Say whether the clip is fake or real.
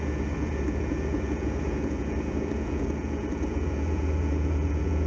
fake